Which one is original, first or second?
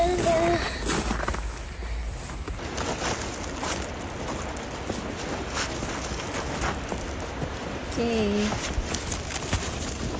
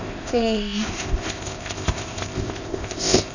first